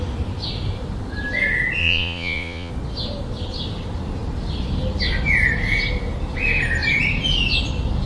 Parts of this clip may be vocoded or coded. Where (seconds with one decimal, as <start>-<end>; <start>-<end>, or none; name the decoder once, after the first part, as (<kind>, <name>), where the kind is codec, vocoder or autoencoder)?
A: 1.8-2.7 (vocoder, Vocos)